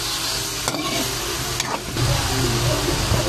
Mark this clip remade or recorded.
recorded